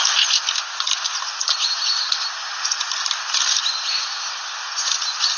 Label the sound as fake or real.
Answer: real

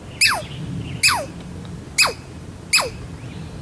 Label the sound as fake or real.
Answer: real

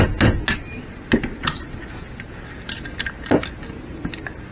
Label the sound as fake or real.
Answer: real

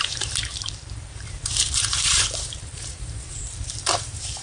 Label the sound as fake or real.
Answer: fake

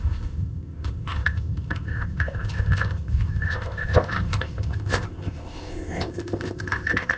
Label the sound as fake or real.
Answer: fake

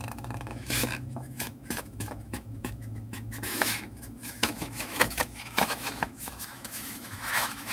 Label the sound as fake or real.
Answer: fake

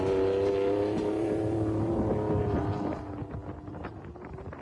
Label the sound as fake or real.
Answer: real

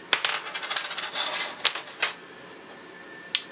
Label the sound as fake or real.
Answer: real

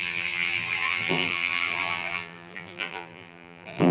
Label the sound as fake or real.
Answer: fake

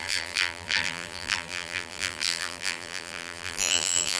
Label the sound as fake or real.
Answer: fake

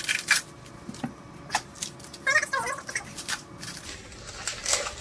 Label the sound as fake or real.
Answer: real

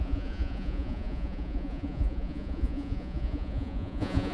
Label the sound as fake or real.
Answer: fake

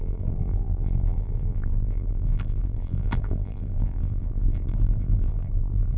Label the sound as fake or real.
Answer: fake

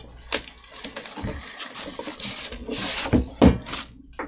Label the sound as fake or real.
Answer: real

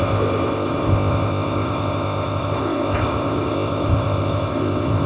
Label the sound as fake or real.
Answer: fake